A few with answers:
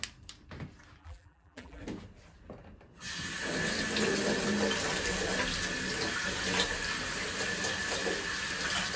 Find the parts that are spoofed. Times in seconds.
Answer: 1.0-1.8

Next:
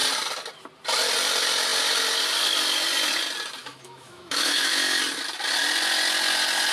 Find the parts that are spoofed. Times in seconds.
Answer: 3.6-5.0